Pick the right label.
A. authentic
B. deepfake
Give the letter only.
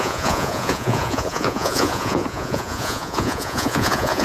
B